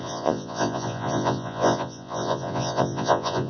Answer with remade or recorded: remade